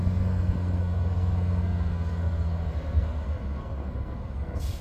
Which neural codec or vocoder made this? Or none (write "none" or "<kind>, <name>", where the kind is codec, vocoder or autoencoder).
codec, SNAC